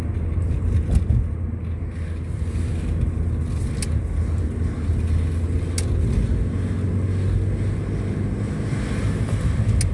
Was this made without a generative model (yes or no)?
yes